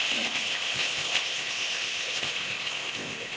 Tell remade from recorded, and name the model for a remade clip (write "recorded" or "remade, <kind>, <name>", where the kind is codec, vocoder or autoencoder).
remade, codec, ZipCodec